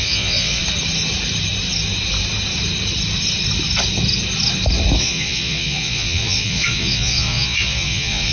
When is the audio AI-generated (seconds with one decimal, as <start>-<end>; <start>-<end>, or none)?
0.0-0.6; 5.0-8.3